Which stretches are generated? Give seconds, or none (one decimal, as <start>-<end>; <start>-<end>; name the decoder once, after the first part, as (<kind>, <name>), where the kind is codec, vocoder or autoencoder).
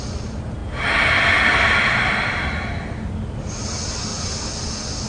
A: none